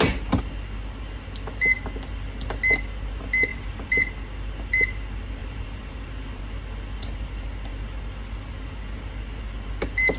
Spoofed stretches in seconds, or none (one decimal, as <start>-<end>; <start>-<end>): 3.5-4.1; 5.4-6.4